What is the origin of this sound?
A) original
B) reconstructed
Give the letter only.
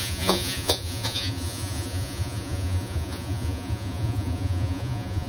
B